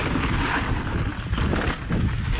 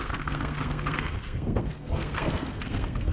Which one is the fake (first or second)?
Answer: second